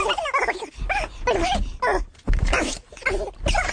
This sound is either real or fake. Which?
real